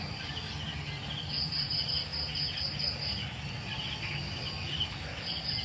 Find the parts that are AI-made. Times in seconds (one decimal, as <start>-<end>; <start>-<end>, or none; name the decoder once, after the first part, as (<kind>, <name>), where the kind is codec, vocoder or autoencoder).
none